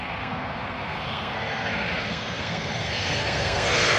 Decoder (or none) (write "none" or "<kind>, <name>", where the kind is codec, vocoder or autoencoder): codec, SNAC